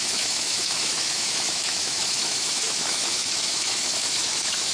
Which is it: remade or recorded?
remade